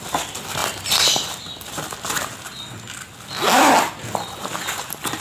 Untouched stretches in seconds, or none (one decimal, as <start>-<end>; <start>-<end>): 0.0-5.2